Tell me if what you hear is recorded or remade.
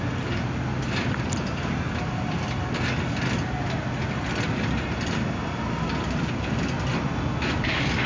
recorded